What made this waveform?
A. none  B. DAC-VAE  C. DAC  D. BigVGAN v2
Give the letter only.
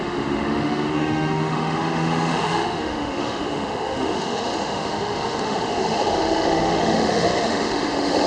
B